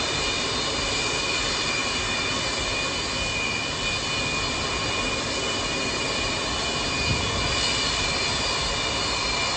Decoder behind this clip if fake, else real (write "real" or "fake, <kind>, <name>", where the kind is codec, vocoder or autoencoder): real